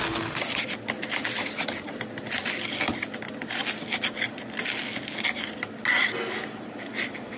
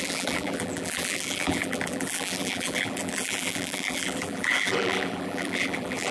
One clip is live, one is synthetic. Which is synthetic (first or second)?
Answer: second